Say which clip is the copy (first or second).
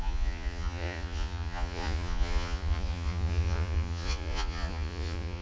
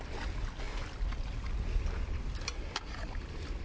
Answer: first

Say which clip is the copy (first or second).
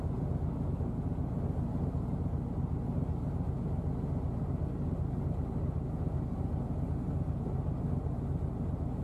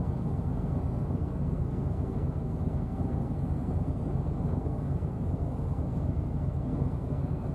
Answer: second